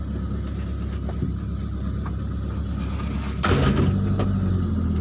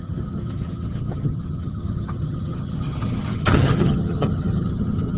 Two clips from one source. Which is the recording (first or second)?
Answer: first